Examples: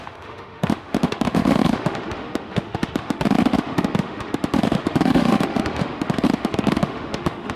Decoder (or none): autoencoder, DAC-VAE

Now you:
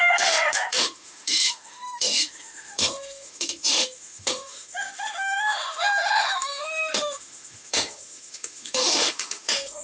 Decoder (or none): autoencoder, DAC-VAE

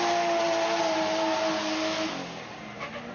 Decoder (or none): none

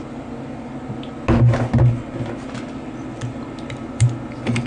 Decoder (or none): none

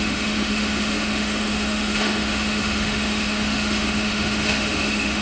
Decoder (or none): autoencoder, DAC-VAE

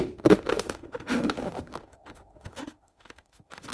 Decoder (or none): autoencoder, DAC-VAE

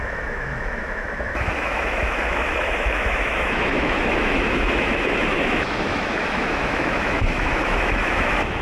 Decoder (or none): autoencoder, DAC-VAE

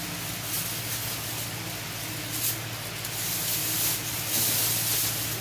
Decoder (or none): none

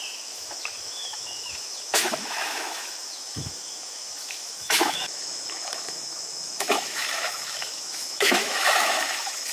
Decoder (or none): autoencoder, DAC-VAE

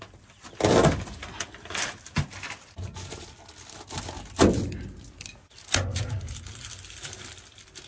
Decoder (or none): none